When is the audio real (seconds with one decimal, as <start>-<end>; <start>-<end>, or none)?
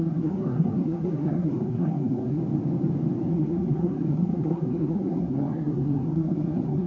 2.4-3.3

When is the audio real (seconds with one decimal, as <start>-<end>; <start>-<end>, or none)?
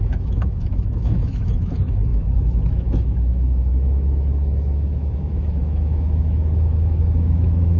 none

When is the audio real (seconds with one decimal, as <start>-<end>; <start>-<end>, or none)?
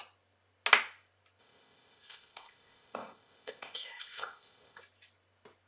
0.0-1.4; 4.8-5.7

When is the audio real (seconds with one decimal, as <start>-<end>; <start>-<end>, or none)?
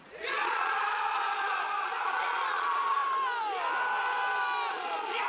3.0-4.7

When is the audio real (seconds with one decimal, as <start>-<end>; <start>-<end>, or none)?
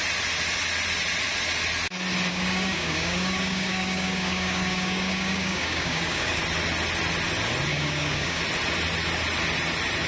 0.0-2.3; 6.4-7.7; 8.4-10.1